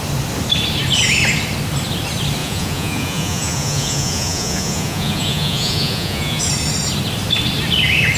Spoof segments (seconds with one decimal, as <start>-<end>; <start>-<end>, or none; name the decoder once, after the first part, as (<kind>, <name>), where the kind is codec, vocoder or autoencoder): 2.4-6.4 (vocoder, Vocos)